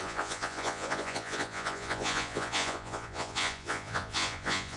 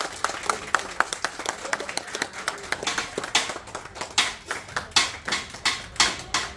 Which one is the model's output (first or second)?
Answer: first